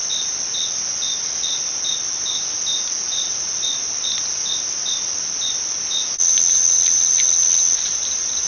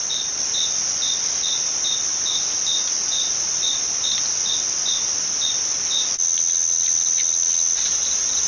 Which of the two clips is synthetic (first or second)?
first